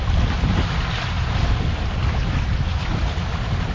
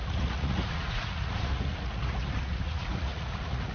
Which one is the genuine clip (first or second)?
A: first